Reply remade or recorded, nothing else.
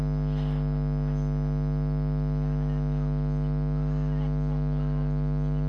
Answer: recorded